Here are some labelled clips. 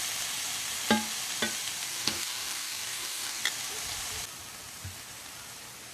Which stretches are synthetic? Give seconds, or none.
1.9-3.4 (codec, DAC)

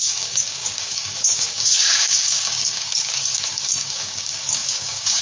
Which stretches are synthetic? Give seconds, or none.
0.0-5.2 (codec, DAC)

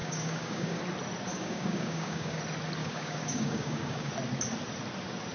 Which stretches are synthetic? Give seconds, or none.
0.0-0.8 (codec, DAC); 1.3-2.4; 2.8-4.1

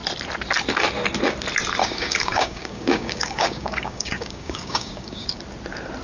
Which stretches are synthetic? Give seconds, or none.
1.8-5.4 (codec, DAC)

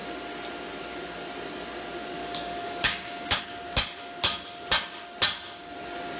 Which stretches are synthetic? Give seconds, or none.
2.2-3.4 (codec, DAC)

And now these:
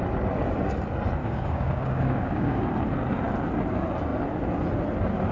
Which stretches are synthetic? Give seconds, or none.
1.2-2.6 (codec, DAC)